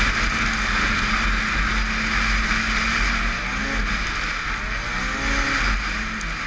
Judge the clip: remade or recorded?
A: recorded